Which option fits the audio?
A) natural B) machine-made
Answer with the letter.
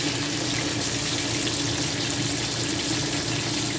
A